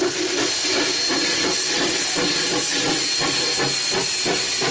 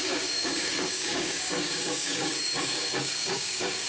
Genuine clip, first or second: first